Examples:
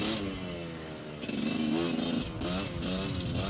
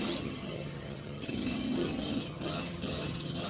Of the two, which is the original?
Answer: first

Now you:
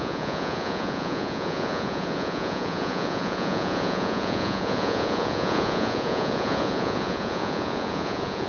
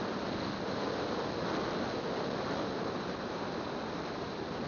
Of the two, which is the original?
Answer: second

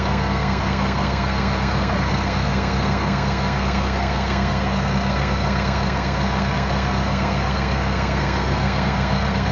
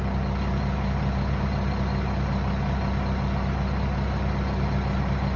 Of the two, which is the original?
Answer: second